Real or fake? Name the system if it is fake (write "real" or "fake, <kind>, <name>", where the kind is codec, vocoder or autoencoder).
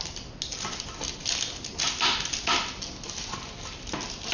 real